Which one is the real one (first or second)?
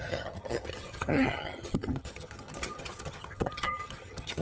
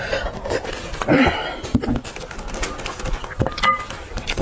second